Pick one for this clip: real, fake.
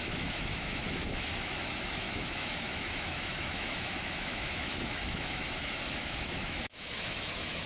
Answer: fake